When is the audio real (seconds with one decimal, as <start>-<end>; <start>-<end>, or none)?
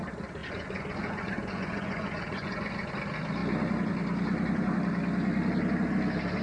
0.0-0.4; 2.9-6.4